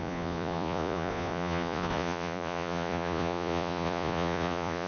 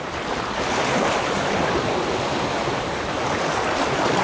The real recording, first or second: second